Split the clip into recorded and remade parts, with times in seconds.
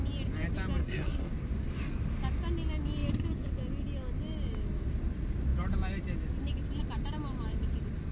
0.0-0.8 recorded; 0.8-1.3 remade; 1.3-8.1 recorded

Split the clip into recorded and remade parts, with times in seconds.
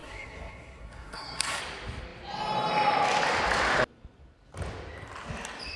0.0-1.6 remade; 1.6-5.8 recorded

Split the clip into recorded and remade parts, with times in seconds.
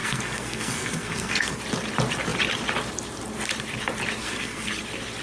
0.0-1.6 remade; 1.6-4.2 recorded; 4.2-4.7 remade; 4.7-5.2 recorded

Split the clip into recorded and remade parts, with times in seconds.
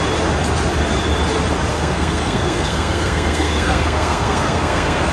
0.0-1.7 recorded; 1.7-5.1 remade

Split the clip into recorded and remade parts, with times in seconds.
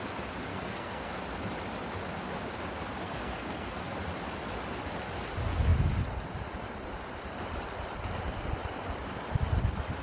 0.0-0.5 recorded; 0.5-1.1 remade; 1.1-3.0 recorded; 3.0-3.7 remade; 3.7-10.0 recorded